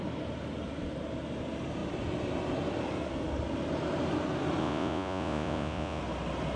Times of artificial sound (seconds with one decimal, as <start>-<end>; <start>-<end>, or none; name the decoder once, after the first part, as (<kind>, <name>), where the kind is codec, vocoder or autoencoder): 4.6-6.0 (vocoder, Vocos)